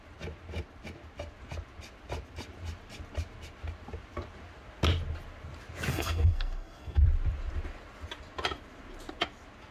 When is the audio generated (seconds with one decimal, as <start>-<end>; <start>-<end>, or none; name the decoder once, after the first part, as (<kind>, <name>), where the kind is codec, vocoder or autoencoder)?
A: 5.9-7.0 (codec, SNAC)